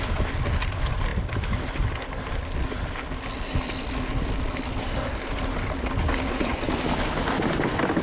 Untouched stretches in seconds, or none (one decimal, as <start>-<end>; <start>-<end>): 0.0-8.0